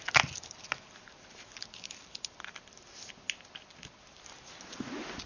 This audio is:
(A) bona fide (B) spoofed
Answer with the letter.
A